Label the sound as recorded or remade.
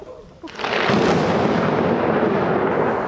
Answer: recorded